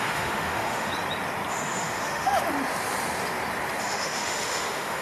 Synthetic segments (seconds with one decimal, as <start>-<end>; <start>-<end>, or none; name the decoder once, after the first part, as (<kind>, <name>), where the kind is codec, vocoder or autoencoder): 0.0-0.9 (autoencoder, DAC-VAE); 1.5-2.3; 3.8-5.0

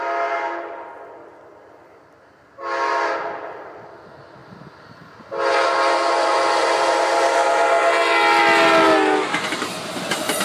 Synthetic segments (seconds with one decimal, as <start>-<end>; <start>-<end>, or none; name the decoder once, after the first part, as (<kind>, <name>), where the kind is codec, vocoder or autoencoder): none

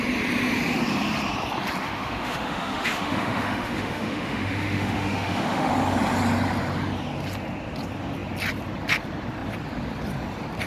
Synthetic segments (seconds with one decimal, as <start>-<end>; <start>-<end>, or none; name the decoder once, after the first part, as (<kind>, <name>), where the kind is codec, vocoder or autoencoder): 1.8-5.7 (autoencoder, DAC-VAE)

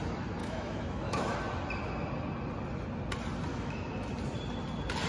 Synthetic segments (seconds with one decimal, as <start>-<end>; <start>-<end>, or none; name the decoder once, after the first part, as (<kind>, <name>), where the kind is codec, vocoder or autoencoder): 0.4-1.4 (autoencoder, DAC-VAE); 3.5-4.1

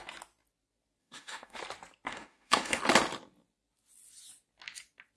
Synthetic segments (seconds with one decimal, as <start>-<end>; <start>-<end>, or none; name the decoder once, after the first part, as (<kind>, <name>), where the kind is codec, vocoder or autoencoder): 1.0-1.6 (autoencoder, DAC-VAE); 2.1-2.8

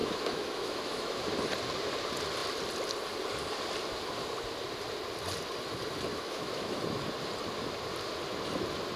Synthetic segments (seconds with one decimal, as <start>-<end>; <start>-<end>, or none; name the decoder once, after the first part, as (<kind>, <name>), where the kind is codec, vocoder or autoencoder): 0.0-1.3 (autoencoder, DAC-VAE); 6.1-6.8

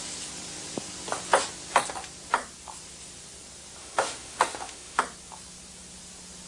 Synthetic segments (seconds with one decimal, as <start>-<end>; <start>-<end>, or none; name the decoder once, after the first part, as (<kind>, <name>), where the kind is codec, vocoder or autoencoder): 3.8-5.0 (autoencoder, DAC-VAE)